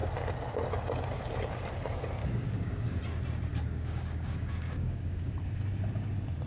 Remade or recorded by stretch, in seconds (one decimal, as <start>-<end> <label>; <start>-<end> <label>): 0.0-2.2 recorded; 2.2-3.0 remade; 3.0-3.5 recorded; 3.5-5.3 remade; 5.3-6.5 recorded